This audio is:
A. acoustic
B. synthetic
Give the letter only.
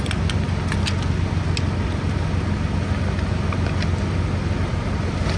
A